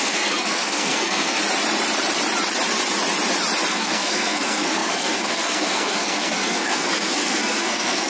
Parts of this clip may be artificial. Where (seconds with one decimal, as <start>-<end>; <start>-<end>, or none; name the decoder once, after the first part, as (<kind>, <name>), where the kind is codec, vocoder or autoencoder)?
0.0-1.4 (codec, SNAC); 3.7-8.1